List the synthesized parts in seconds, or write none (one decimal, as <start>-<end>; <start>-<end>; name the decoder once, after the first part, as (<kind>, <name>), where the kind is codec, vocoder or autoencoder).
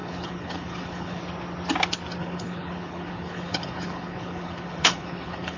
0.0-1.2 (codec, HILCodec); 2.2-5.6